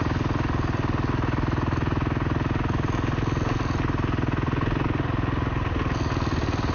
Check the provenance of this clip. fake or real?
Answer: real